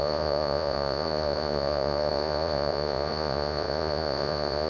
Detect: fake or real fake